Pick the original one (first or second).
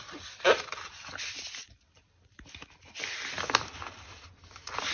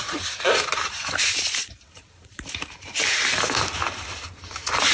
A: first